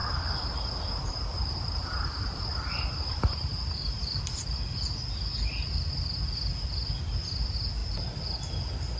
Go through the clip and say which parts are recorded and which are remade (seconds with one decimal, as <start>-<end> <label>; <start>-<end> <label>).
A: 0.0-4.2 remade; 4.2-9.0 recorded